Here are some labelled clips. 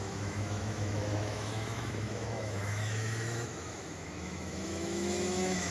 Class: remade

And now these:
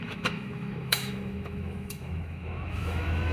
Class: remade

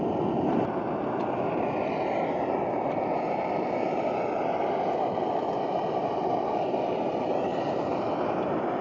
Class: recorded